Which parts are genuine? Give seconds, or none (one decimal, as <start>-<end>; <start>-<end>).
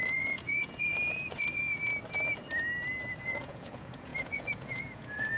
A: 1.9-3.2